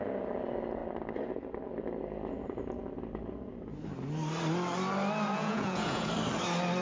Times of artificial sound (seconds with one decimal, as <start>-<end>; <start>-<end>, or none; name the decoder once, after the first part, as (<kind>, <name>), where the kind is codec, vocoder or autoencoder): 5.3-6.1 (vocoder, Vocos)